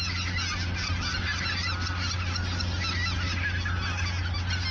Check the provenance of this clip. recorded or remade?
recorded